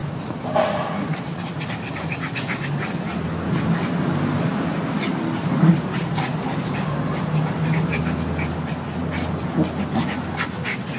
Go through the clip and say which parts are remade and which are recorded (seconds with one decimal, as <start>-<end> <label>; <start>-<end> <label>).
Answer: 0.0-11.0 recorded